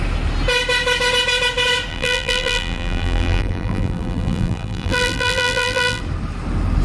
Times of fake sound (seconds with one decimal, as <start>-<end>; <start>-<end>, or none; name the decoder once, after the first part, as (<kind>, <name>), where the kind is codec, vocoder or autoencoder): 1.9-6.0 (vocoder, BigVGAN v2)